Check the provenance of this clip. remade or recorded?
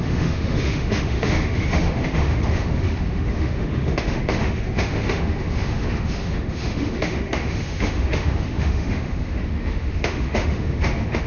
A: remade